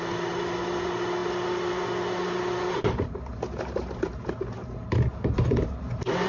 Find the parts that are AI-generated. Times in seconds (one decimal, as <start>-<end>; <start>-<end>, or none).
none